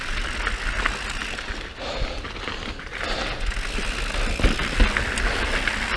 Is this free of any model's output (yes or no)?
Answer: yes